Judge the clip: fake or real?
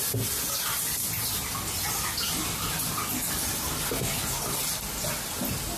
real